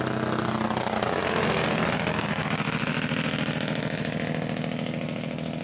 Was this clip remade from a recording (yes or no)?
no